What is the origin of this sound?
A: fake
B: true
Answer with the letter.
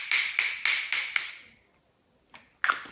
B